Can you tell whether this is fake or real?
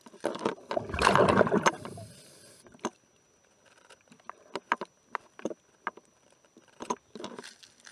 fake